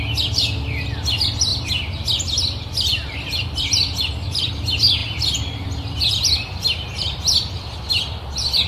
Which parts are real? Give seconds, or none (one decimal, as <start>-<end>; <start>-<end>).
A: 0.0-8.7